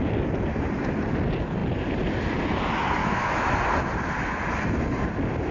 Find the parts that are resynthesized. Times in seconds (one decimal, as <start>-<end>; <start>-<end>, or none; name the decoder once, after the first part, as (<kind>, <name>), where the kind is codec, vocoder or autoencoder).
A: 3.0-3.5 (autoencoder, DAC-VAE)